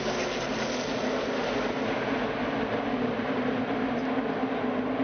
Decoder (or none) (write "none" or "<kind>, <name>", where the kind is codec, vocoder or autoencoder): none